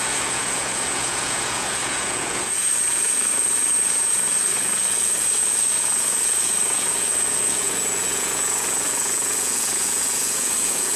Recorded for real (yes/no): no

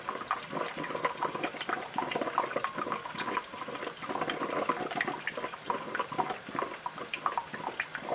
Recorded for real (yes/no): yes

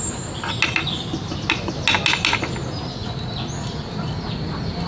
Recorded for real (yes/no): yes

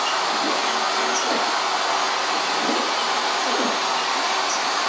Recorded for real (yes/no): yes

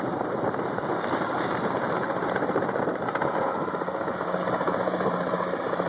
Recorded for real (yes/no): no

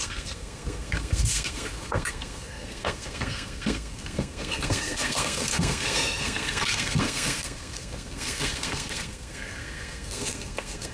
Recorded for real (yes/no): no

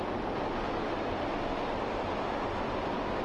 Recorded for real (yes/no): yes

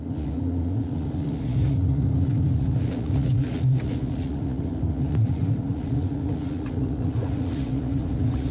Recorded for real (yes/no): no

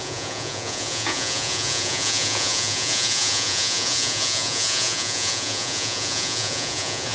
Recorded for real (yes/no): no